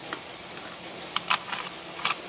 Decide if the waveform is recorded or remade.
recorded